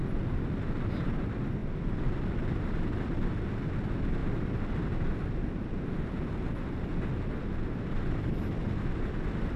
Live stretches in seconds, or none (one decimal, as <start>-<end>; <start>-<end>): 0.0-9.6